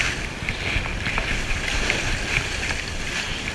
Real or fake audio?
real